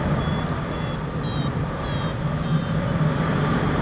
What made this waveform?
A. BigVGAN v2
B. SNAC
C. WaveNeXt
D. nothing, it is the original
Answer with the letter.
D